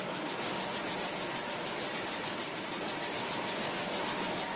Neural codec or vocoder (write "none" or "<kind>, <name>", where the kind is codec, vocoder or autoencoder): none